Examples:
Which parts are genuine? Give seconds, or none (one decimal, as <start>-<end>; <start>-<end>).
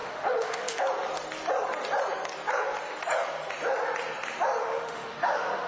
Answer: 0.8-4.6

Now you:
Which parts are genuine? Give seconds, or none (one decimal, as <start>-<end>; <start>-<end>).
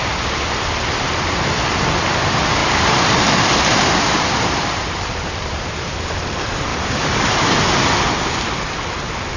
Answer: 0.0-2.6; 5.9-6.7; 7.6-9.4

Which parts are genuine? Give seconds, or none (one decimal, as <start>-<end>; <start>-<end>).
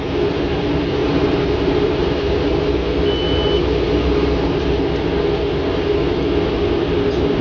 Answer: 0.0-1.0; 2.5-3.6; 4.6-7.4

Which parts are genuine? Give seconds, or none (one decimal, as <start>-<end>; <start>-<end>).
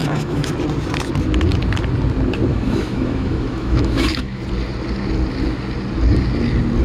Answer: 0.5-2.5; 4.4-6.8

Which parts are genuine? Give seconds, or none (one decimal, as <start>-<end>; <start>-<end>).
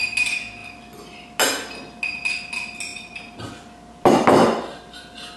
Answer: 0.0-2.9; 3.5-5.4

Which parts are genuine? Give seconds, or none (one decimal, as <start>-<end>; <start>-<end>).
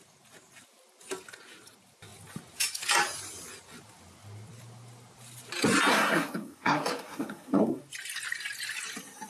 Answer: 0.0-5.9; 7.8-9.3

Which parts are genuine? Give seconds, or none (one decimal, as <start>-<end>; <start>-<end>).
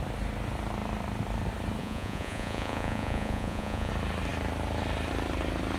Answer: 0.0-1.8; 3.9-5.8